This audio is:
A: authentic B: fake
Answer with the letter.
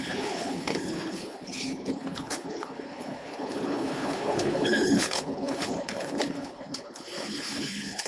B